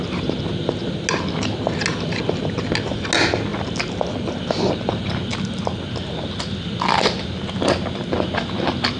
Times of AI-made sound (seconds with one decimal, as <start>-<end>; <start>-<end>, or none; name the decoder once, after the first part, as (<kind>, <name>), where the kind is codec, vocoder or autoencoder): none